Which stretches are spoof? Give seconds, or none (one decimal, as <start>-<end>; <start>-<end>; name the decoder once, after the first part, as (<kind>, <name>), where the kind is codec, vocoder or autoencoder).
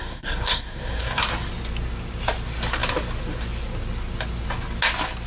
0.0-1.2 (codec, SNAC)